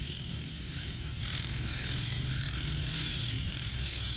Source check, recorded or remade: remade